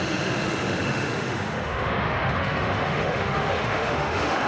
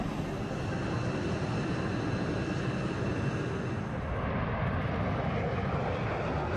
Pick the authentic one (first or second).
second